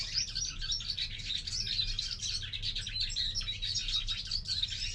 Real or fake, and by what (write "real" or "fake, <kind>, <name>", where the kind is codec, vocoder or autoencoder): real